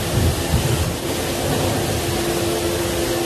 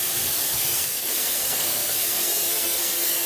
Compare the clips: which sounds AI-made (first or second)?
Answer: second